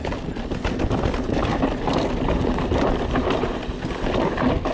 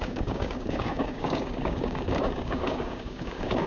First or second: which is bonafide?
first